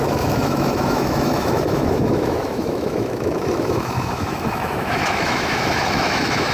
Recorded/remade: remade